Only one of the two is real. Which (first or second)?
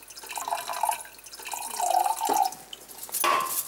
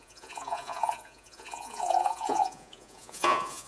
first